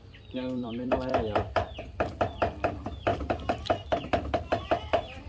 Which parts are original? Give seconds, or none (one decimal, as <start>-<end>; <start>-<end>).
none